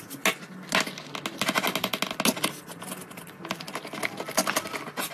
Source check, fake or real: real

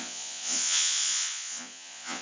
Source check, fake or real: fake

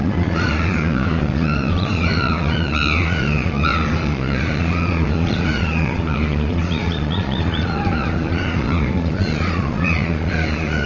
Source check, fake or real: fake